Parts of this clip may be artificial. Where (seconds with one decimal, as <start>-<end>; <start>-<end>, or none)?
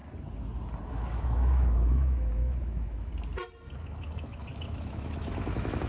0.9-3.1; 3.8-5.9